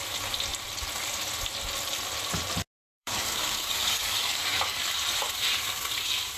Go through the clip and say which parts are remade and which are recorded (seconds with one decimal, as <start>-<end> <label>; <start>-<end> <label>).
0.0-2.8 recorded; 2.8-4.9 remade; 4.9-6.4 recorded